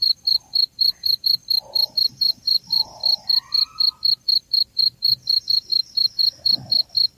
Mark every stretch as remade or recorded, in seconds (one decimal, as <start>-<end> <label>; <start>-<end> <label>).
0.0-1.4 remade; 1.4-2.1 recorded; 2.1-3.0 remade; 3.0-4.7 recorded; 4.7-6.2 remade; 6.2-7.2 recorded